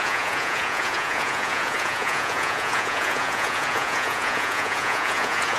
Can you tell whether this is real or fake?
fake